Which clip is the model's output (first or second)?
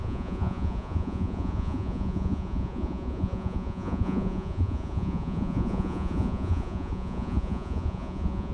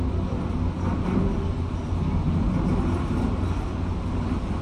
first